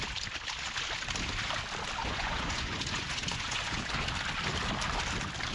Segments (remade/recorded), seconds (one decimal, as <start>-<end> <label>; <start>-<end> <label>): 0.0-2.0 recorded; 2.0-4.1 remade; 4.1-5.5 recorded